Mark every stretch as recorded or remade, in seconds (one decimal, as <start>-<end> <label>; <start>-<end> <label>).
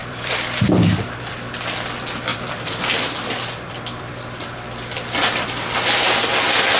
0.0-1.3 remade; 1.3-2.3 recorded; 2.3-4.5 remade; 4.5-6.8 recorded